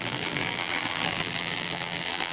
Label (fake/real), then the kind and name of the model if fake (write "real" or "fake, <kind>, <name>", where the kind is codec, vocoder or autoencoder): fake, vocoder, BigVGAN v2